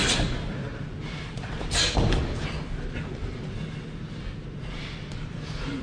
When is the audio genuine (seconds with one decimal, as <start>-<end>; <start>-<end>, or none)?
0.0-5.8